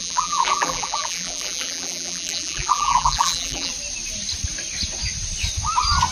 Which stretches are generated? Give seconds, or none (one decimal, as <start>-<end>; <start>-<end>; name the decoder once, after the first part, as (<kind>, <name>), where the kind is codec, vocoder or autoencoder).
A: 0.0-3.7 (vocoder, BigVGAN v2)